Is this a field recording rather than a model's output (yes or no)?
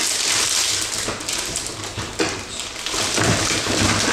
yes